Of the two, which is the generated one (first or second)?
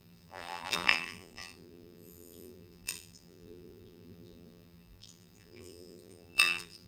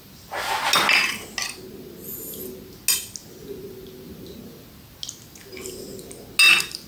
first